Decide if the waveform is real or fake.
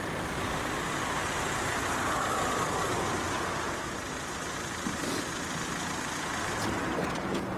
real